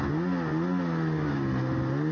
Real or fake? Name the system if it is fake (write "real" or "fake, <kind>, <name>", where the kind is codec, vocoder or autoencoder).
real